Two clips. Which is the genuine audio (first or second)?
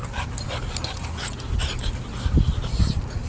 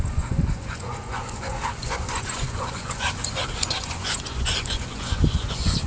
first